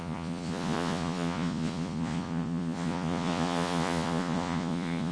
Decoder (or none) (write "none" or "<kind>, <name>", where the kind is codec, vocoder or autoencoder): vocoder, Vocos